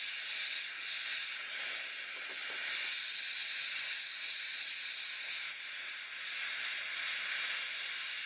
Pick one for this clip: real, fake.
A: real